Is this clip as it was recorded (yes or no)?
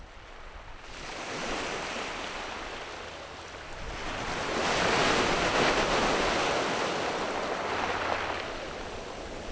yes